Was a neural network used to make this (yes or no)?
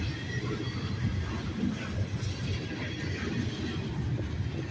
no